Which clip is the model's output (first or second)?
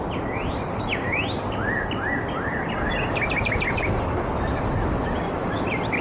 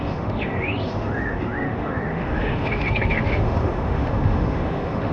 second